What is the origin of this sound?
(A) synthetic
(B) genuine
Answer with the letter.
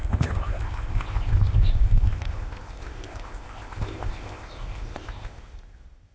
A